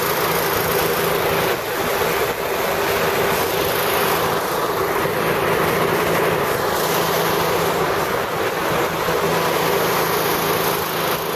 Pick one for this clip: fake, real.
real